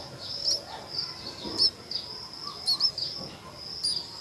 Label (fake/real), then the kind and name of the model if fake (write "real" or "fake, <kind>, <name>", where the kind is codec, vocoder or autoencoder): real